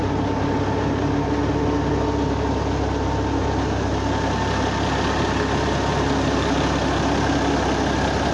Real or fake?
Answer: real